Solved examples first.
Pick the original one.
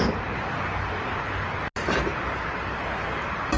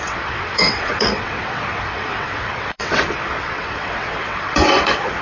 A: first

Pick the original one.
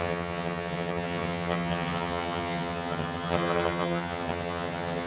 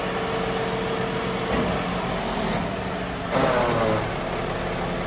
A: second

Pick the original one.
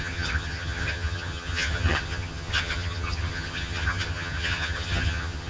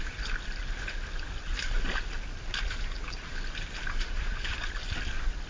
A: second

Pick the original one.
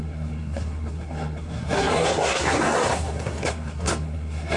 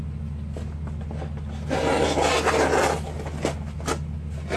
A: second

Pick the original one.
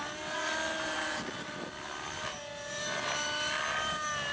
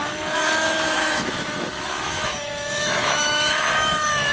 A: first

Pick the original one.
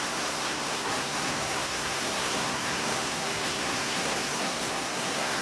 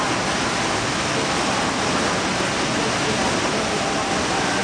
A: second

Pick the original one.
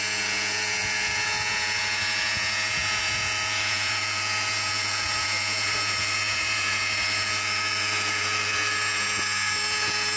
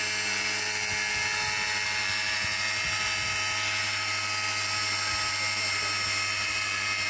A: second